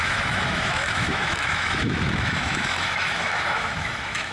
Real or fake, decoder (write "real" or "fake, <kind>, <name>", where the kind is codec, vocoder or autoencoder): fake, autoencoder, DAC-VAE